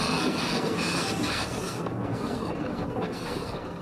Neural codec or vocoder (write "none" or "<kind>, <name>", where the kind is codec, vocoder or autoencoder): codec, SNAC